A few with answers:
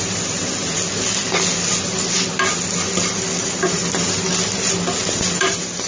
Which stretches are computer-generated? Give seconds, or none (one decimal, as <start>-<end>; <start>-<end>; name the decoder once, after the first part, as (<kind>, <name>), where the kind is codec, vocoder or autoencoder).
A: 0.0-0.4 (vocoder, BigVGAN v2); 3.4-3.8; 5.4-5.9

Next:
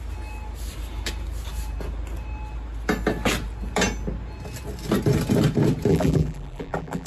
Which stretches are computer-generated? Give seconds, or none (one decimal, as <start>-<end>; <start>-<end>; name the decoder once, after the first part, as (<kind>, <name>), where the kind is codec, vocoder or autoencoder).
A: 5.9-7.1 (vocoder, BigVGAN v2)

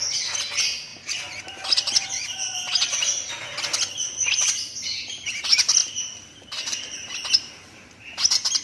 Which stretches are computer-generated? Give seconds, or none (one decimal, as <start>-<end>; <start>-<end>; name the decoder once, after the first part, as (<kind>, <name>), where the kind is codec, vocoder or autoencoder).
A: 0.9-2.1 (vocoder, BigVGAN v2); 5.8-8.2

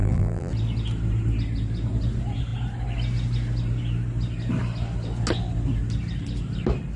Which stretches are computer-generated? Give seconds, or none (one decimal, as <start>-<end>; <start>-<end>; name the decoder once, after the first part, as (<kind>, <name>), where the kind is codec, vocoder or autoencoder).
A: 0.0-0.5 (vocoder, BigVGAN v2)

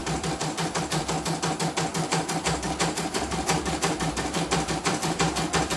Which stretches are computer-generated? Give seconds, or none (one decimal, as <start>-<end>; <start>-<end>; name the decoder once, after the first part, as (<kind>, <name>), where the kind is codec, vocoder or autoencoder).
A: 0.0-1.0 (vocoder, BigVGAN v2); 1.9-5.2

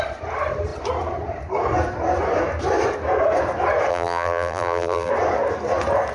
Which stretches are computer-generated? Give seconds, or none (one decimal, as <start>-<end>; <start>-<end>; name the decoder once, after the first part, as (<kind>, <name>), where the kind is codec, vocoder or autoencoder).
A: 3.9-5.1 (vocoder, BigVGAN v2)